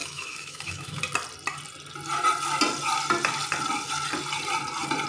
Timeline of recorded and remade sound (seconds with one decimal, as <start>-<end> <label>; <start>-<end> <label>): 0.0-1.0 remade; 1.0-5.1 recorded